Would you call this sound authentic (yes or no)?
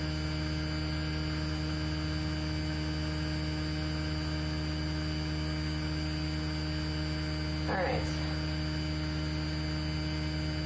yes